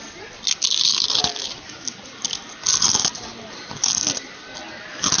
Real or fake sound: real